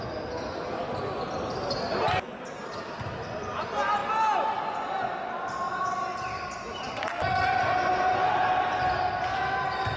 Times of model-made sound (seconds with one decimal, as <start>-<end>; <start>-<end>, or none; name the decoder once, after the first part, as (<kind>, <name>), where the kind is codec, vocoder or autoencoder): none